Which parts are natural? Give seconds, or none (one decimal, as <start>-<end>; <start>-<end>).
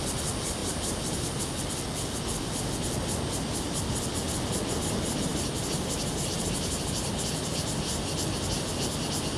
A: 0.0-0.6; 1.4-5.3; 7.1-9.4